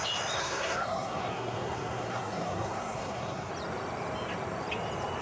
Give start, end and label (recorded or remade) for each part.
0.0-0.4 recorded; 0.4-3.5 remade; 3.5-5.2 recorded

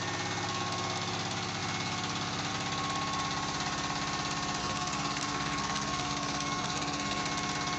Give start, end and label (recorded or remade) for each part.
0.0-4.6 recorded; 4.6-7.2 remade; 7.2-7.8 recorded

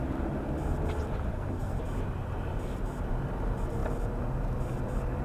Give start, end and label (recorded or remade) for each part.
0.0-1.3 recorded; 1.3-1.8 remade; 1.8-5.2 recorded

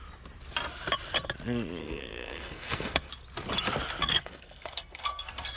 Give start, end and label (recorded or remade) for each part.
0.0-1.8 recorded; 1.8-3.1 remade; 3.1-4.0 recorded; 4.0-5.6 remade

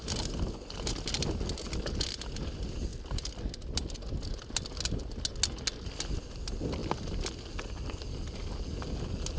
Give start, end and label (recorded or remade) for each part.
0.0-9.4 recorded